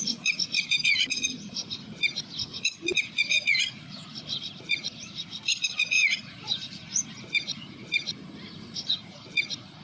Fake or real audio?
fake